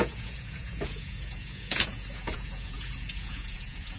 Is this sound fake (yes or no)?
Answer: yes